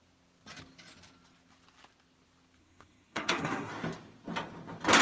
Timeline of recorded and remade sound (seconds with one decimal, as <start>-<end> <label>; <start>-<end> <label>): 0.0-2.6 recorded; 2.6-3.7 remade; 3.7-5.0 recorded